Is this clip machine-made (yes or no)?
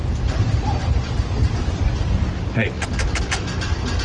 no